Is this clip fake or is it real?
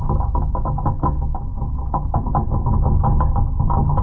fake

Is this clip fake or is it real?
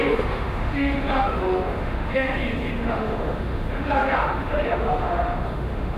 fake